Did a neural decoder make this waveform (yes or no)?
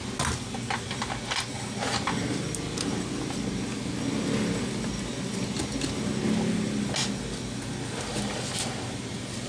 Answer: no